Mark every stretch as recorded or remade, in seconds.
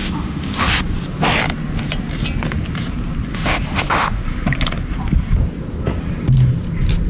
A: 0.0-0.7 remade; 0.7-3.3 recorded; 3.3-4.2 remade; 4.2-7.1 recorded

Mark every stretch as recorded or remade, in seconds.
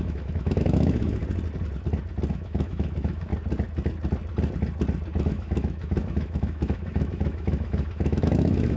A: 0.0-1.2 remade; 1.2-2.3 recorded; 2.3-3.3 remade; 3.3-5.2 recorded; 5.2-8.8 remade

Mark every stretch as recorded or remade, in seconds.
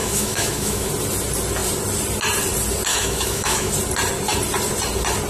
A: 0.0-0.9 remade; 0.9-2.9 recorded; 2.9-3.7 remade; 3.7-5.3 recorded